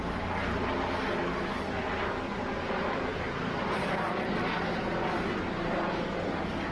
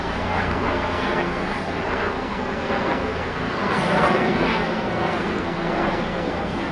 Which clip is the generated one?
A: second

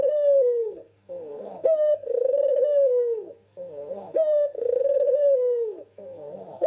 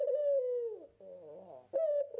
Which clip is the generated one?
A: first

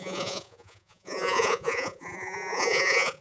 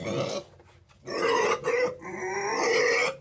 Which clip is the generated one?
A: first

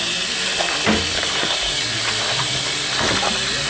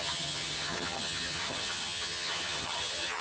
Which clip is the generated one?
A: second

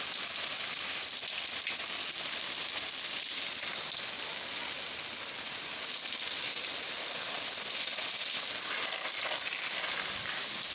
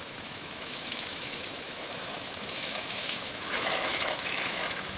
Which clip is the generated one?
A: second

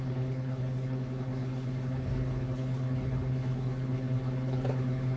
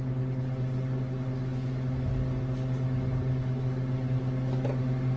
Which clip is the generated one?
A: first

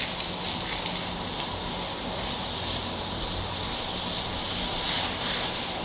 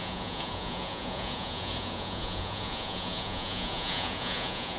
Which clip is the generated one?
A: second